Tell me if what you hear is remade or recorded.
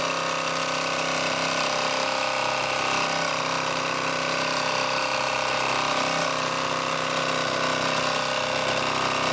recorded